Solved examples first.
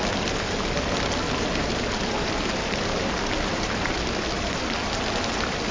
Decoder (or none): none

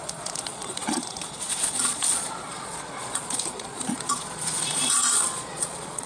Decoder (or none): vocoder, Vocos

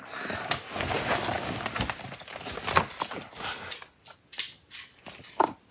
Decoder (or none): none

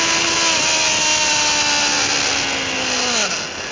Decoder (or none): none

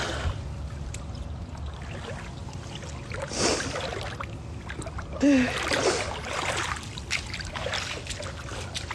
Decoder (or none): none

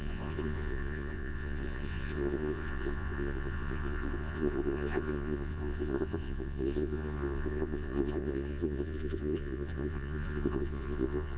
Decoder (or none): vocoder, Vocos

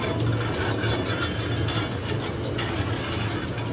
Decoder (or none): none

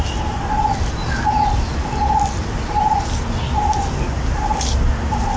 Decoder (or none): none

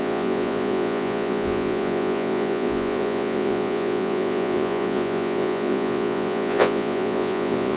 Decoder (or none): vocoder, Vocos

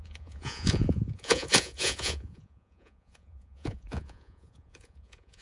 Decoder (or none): vocoder, Vocos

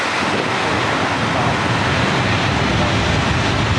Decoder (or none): none